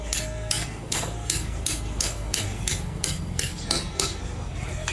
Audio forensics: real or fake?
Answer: fake